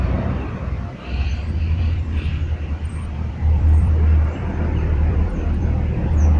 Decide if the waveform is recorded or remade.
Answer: remade